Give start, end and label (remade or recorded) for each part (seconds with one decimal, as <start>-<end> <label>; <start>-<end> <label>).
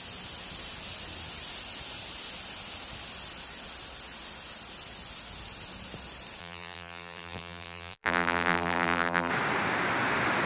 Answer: 0.0-6.4 recorded; 6.4-9.3 remade; 9.3-10.5 recorded